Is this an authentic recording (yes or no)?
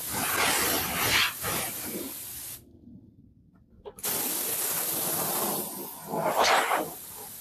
yes